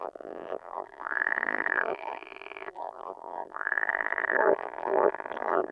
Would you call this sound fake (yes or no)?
yes